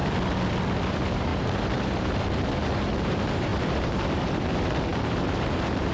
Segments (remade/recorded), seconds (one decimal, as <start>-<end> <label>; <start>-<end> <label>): 0.0-0.9 recorded; 0.9-5.9 remade